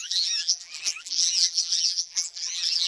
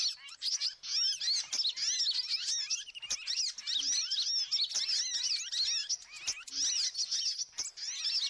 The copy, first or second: first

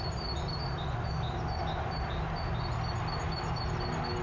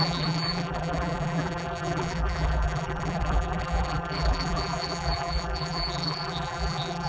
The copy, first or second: second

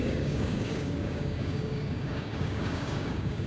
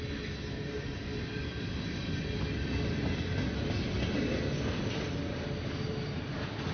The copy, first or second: first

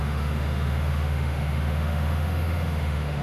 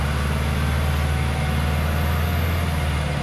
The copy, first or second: first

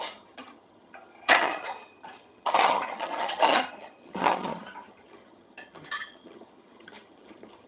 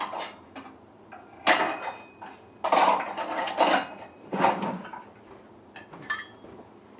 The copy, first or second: first